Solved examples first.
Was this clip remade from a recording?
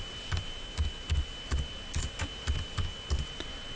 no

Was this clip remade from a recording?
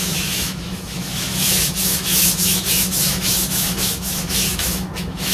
yes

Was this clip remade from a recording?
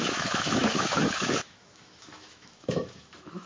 yes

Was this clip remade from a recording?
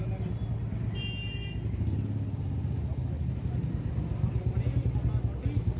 no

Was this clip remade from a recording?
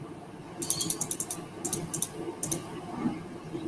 no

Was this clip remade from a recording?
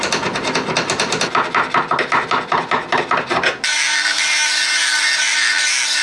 no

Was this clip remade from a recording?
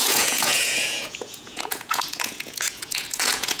yes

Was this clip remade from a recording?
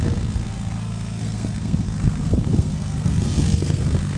yes